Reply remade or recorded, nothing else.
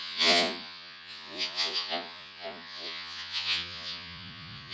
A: remade